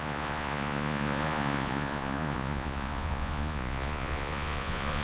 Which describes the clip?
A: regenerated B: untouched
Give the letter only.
A